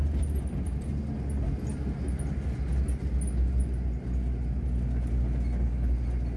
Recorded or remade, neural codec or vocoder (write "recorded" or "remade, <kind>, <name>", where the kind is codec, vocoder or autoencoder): recorded